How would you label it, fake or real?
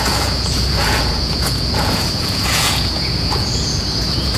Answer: fake